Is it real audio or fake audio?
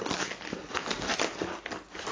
real